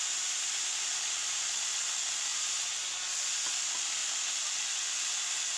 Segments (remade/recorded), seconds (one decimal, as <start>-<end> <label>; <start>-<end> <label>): 0.0-5.6 recorded